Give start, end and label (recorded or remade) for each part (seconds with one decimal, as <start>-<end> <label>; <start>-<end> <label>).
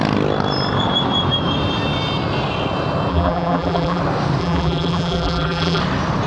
0.0-3.1 recorded; 3.1-4.0 remade; 4.0-4.4 recorded; 4.4-5.8 remade; 5.8-6.3 recorded